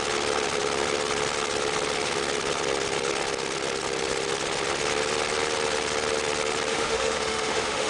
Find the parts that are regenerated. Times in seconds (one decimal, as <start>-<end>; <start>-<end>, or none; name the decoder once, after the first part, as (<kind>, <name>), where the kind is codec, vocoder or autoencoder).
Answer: 6.7-7.9 (autoencoder, DAC-VAE)